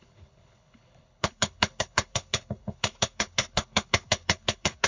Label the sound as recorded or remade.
remade